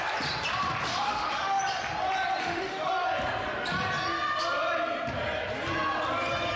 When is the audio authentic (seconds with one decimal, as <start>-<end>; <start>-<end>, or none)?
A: 0.0-0.9; 1.6-2.4; 2.9-6.6